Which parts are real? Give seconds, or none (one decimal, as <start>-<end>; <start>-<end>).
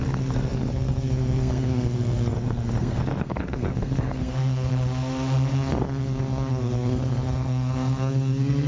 4.7-5.5